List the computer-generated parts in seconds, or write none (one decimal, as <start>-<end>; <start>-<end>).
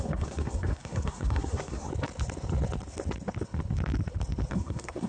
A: 0.0-1.9; 4.5-5.1